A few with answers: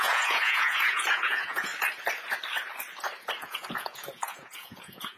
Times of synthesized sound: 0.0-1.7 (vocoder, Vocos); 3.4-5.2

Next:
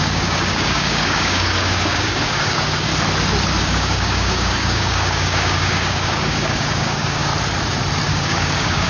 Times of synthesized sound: 0.0-2.9 (codec, DAC); 3.6-7.3; 8.1-8.9

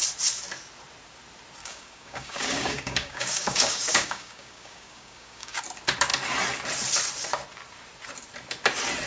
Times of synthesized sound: 1.6-5.6 (codec, DAC)